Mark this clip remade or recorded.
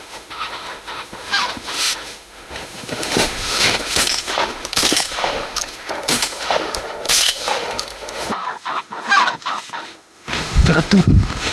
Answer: remade